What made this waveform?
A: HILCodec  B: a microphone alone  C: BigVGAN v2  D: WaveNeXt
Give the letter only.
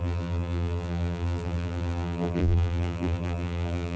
C